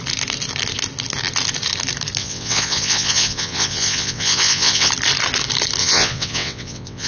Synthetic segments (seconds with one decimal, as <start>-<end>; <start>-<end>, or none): 2.2-4.9; 5.8-7.1